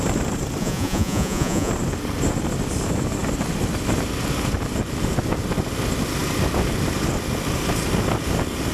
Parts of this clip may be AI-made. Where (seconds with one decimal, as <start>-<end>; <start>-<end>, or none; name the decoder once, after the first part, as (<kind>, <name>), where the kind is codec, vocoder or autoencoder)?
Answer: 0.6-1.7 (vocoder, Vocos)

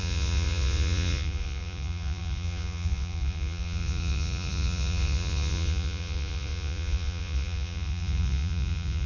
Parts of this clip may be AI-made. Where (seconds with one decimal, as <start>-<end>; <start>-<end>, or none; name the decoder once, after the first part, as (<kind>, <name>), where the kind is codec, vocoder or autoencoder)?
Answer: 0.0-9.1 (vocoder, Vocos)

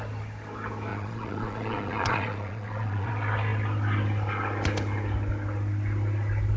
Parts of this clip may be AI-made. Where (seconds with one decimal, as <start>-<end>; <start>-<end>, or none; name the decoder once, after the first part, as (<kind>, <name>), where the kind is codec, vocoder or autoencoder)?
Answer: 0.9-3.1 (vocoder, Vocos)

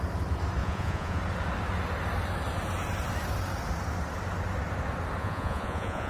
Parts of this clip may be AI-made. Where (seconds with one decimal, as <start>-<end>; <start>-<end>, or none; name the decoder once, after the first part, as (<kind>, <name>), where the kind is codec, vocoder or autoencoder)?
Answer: 0.6-1.2 (vocoder, Vocos); 5.2-6.1